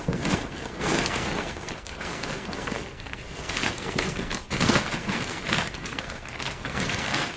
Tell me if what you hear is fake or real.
fake